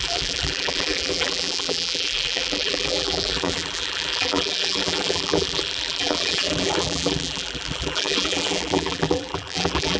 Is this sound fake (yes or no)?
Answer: yes